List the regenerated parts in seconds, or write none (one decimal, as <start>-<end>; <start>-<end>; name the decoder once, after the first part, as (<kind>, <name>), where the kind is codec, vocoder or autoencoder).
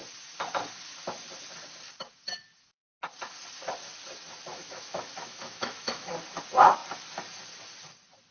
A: 4.5-6.1 (autoencoder, DAC-VAE)